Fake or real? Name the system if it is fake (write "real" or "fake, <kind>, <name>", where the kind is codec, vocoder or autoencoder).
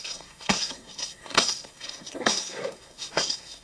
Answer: fake, codec, SNAC